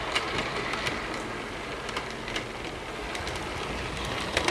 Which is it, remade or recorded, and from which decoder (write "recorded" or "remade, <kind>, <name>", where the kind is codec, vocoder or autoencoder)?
recorded